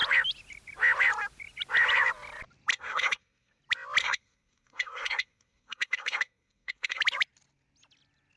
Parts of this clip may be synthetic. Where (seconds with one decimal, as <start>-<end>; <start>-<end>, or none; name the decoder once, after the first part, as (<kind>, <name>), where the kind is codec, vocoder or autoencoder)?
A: 2.7-3.6 (codec, SNAC); 4.0-7.0